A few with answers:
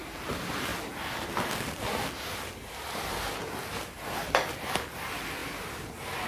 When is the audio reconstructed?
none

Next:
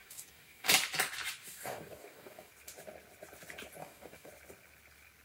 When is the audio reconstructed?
0.0-0.7 (codec, DAC); 1.4-2.5; 3.8-4.3

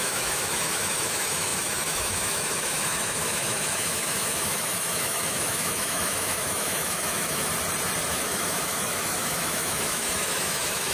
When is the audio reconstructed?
0.0-7.5 (autoencoder, DAC-VAE); 8.1-10.9

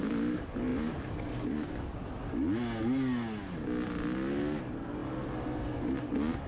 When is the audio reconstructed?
none

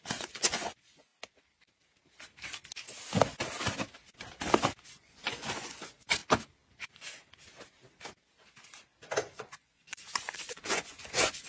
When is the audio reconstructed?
0.0-1.1 (vocoder, Vocos); 4.9-6.2; 6.7-7.2; 9.3-11.5

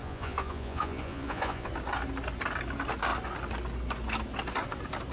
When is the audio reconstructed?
0.0-1.7 (vocoder, Vocos)

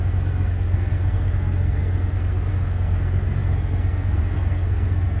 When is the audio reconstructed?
0.0-5.2 (codec, SNAC)